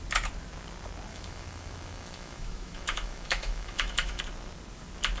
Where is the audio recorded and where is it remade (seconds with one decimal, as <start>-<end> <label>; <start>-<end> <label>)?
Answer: 0.0-1.1 recorded; 1.1-4.2 remade; 4.2-5.2 recorded